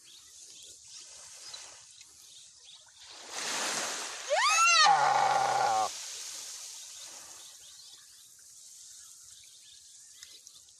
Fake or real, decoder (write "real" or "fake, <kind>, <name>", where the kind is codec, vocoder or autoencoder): real